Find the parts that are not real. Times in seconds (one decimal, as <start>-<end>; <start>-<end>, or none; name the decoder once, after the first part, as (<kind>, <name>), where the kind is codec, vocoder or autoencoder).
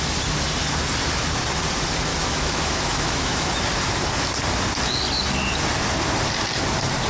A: 2.1-3.5 (autoencoder, DAC-VAE)